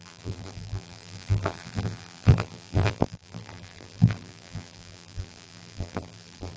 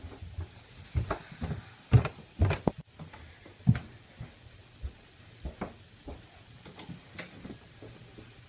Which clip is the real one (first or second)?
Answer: second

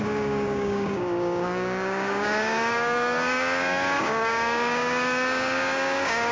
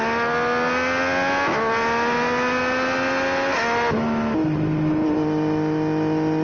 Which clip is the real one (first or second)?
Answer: second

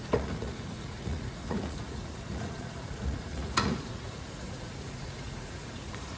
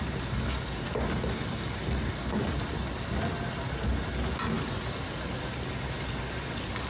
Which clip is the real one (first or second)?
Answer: second